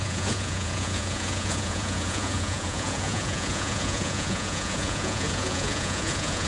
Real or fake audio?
fake